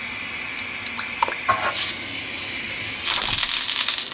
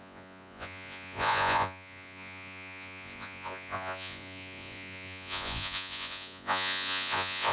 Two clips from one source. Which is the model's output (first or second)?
second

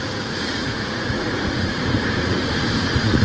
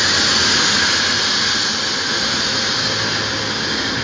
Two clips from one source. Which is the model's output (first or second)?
first